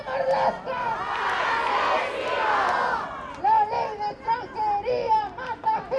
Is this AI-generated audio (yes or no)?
no